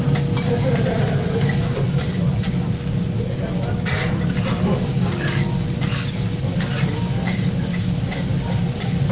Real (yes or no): yes